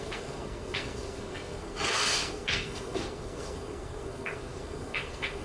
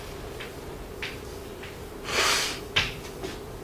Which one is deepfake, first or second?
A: first